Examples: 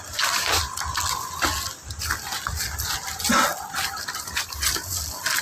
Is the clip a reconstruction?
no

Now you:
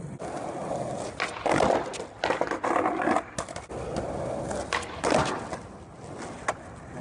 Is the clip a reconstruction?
no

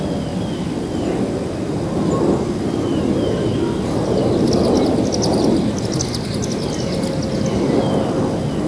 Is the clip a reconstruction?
no